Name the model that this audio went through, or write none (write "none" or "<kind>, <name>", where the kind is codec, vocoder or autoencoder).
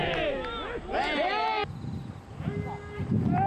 none